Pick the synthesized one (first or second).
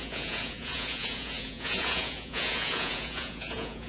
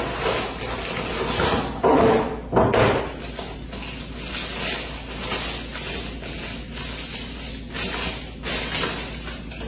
first